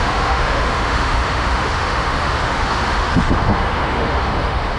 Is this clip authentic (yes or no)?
no